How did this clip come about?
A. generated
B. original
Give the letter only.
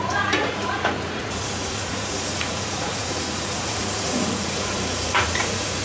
A